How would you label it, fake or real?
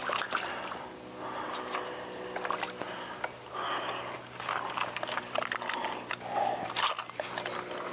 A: real